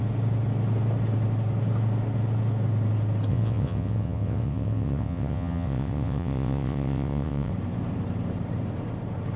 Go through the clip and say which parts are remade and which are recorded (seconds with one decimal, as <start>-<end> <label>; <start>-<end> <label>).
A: 0.0-3.3 recorded; 3.3-7.5 remade; 7.5-9.4 recorded